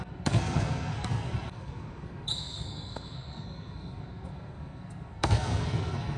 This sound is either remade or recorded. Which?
remade